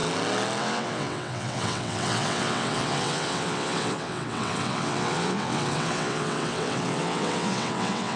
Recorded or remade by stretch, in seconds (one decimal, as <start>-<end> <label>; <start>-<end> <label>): 0.0-0.6 recorded; 0.6-8.2 remade